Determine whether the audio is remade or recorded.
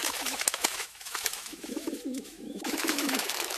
remade